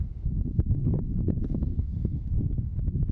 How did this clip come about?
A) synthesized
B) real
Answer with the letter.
A